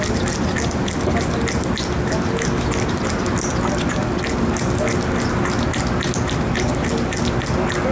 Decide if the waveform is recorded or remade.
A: recorded